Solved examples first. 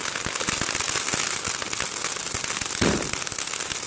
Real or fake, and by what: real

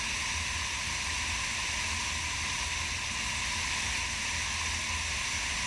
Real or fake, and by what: real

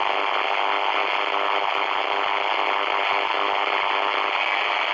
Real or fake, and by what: real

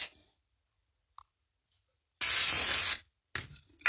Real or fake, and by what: real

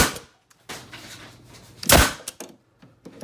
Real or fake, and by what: real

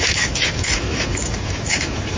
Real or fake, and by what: fake, autoencoder, DAC-VAE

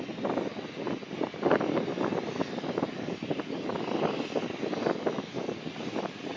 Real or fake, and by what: real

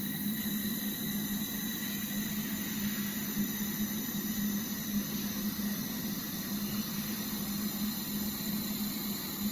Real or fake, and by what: real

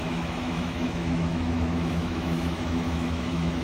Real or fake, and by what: fake, autoencoder, DAC-VAE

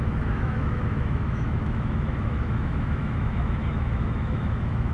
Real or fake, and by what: fake, autoencoder, DAC-VAE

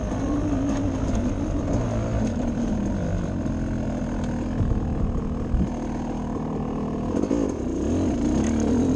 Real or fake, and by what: real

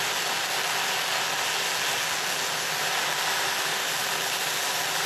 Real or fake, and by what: real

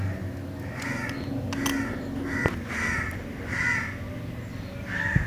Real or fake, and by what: real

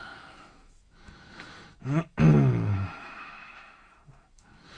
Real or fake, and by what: fake, autoencoder, DAC-VAE